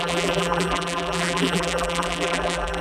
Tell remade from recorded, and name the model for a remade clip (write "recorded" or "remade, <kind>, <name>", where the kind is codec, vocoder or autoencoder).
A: remade, vocoder, BigVGAN v2